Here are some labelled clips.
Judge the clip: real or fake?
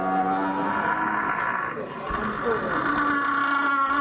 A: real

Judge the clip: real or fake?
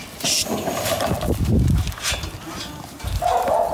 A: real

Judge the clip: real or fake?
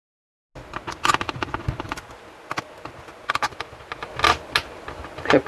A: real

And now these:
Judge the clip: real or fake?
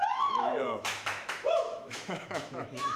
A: fake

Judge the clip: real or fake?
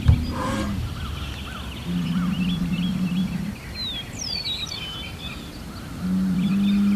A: real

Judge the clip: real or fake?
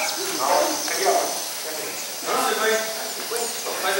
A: real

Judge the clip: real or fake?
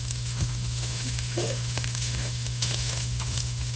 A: fake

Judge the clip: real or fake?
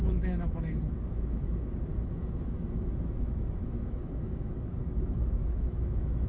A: fake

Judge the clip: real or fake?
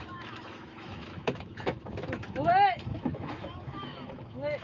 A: fake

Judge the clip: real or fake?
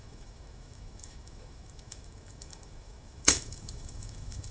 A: fake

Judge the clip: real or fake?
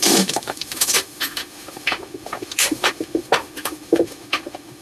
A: fake